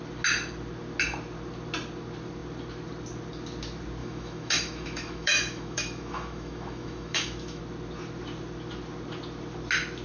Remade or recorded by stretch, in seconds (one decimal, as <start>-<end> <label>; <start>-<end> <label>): 0.0-4.0 recorded; 4.0-7.6 remade; 7.6-10.0 recorded